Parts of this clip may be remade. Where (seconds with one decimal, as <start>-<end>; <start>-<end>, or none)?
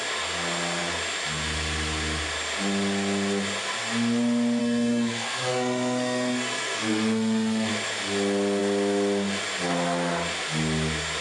4.6-7.7